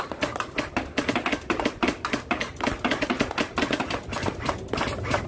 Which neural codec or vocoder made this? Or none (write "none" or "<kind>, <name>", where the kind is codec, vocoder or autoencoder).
none